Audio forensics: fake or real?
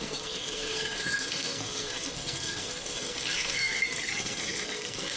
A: fake